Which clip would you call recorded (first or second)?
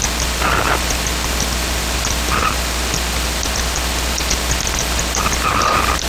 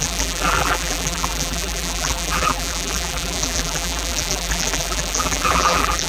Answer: first